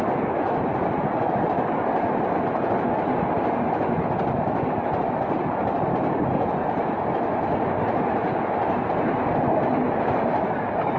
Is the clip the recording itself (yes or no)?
yes